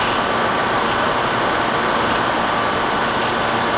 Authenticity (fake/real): real